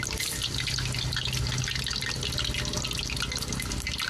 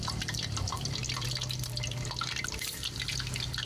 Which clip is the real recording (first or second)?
first